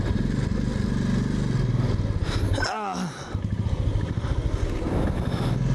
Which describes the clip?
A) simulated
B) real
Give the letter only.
B